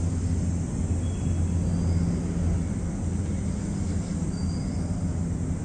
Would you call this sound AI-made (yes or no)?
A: no